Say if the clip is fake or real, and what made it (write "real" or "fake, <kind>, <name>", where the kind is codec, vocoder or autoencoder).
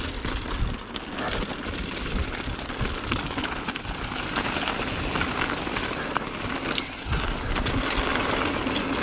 real